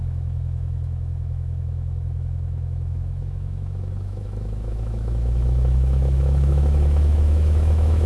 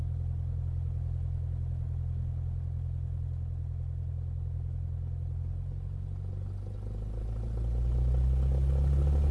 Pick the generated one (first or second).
first